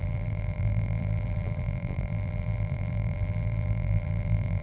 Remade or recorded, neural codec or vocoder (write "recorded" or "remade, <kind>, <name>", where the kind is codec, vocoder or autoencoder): remade, vocoder, BigVGAN v2